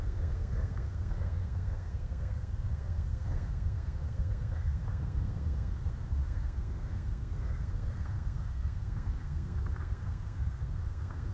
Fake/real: fake